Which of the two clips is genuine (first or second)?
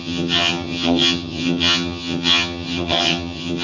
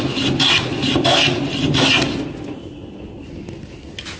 second